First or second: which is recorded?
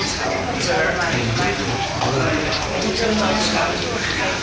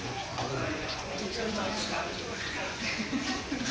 first